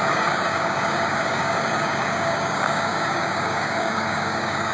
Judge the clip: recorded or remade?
remade